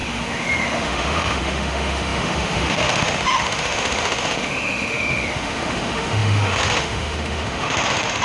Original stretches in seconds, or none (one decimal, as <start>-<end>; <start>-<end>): none